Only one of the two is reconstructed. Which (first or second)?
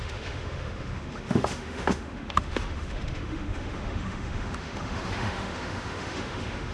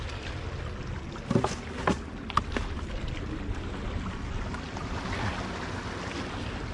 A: first